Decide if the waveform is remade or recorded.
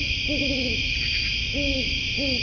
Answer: recorded